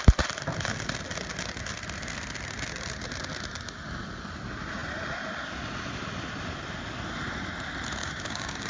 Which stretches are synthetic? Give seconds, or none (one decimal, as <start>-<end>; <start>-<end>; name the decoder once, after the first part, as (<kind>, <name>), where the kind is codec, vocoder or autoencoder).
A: 8.0-8.7 (codec, DAC)